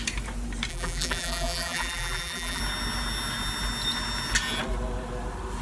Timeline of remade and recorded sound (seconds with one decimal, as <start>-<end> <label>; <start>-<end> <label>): 0.0-0.7 recorded; 0.7-2.6 remade; 2.6-5.6 recorded